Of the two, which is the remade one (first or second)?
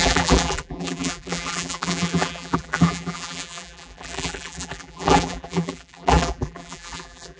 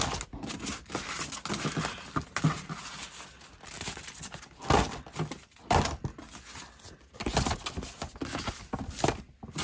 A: first